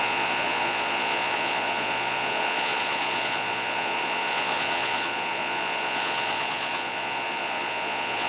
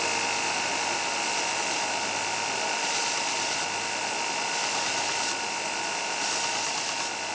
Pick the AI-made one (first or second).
first